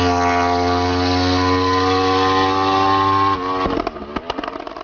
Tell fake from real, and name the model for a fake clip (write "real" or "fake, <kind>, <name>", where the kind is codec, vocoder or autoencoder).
real